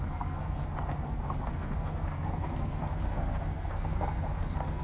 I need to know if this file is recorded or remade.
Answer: remade